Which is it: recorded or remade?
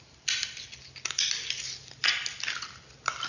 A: recorded